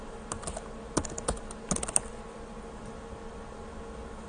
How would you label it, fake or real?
real